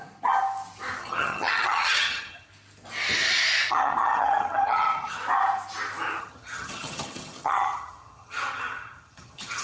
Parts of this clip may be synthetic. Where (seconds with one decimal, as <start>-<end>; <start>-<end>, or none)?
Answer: 1.0-2.5; 3.7-5.2; 6.2-9.6